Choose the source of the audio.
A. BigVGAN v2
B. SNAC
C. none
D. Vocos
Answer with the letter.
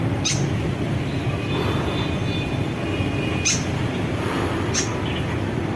C